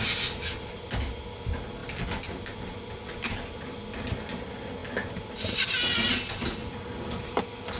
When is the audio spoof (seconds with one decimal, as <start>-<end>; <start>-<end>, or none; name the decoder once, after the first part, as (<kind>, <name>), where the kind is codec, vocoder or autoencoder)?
none